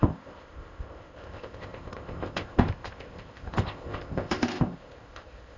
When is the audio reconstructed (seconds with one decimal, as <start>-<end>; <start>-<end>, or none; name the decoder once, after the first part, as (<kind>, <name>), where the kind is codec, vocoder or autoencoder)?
0.0-5.6 (codec, ZipCodec)